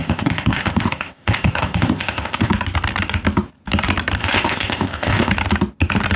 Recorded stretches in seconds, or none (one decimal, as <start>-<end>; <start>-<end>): 2.5-4.2; 5.3-6.2